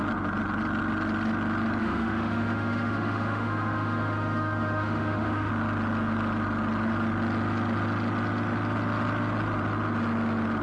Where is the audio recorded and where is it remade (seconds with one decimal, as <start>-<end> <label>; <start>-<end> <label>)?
0.0-1.8 recorded; 1.8-5.5 remade; 5.5-10.6 recorded

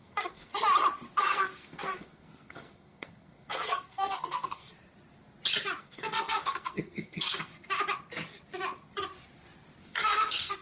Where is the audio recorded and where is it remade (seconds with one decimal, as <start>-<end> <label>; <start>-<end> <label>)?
0.0-0.5 remade; 0.5-1.2 recorded; 1.2-4.7 remade; 4.7-5.8 recorded; 5.8-7.5 remade; 7.5-9.8 recorded; 9.8-10.6 remade